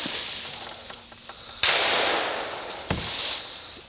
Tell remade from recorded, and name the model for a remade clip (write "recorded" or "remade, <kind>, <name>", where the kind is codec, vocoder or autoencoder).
recorded